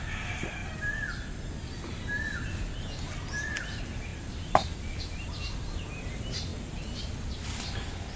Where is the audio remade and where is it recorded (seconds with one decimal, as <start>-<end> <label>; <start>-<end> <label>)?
0.0-4.1 recorded; 4.1-5.0 remade; 5.0-6.5 recorded; 6.5-7.6 remade; 7.6-8.2 recorded